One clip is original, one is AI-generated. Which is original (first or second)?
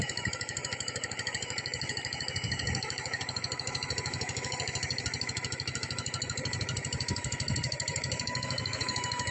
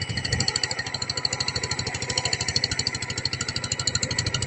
second